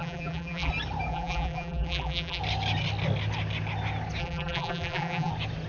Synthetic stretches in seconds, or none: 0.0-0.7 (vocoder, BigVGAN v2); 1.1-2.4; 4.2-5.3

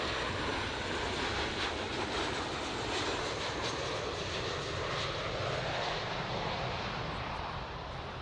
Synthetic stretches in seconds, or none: 3.1-3.7 (vocoder, BigVGAN v2)

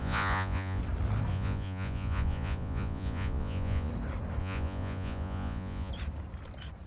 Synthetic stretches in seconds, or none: 0.0-0.8 (vocoder, Vocos); 1.3-3.9; 4.4-5.9

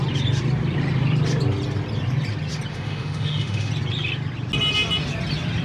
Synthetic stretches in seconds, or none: 2.7-3.7 (autoencoder, DAC-VAE)

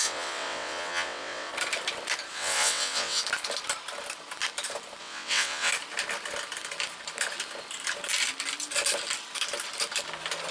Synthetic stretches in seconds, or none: 0.0-1.5 (vocoder, WaveNeXt); 2.3-3.2; 5.0-5.7

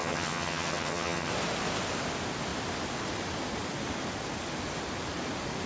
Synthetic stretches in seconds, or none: 0.0-1.3 (vocoder, HiFi-GAN)